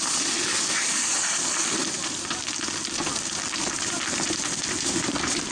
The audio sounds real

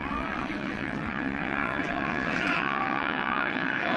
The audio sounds fake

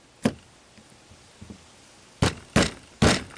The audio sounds real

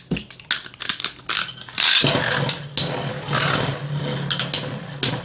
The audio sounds real